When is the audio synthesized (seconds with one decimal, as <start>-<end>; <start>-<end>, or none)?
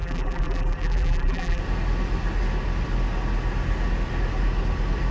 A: 0.0-1.6